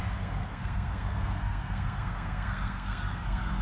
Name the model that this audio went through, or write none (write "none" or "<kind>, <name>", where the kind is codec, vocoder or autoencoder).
codec, SNAC